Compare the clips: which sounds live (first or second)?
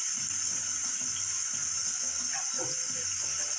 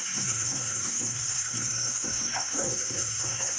first